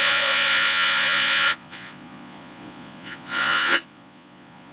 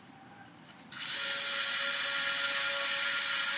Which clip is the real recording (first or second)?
second